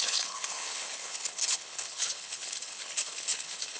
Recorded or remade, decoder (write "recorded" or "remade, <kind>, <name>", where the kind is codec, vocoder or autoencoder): remade, codec, HILCodec